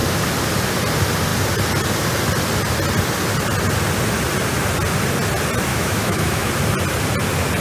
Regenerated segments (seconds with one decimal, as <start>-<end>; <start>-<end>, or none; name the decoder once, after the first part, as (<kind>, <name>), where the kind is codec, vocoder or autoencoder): 5.7-6.5 (autoencoder, DAC-VAE)